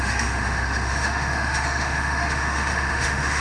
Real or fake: fake